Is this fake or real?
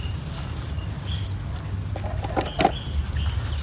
real